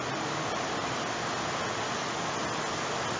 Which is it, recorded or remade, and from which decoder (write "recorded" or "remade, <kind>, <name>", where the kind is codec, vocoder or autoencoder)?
recorded